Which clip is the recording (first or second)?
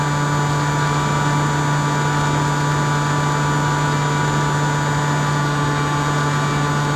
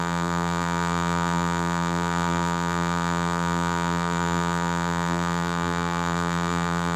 first